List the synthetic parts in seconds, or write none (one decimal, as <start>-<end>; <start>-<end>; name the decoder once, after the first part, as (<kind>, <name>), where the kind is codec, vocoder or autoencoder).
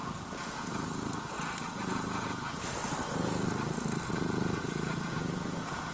0.0-2.8 (vocoder, Vocos); 4.1-5.9